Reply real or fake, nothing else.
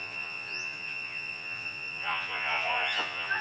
fake